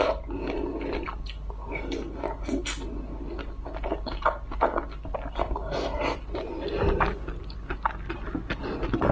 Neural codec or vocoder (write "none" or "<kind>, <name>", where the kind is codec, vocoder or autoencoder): none